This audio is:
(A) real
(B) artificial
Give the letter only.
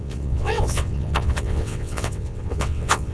B